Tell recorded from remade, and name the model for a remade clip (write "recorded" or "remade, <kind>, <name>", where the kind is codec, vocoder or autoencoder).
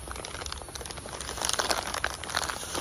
recorded